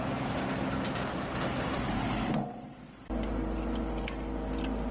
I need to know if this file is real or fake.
real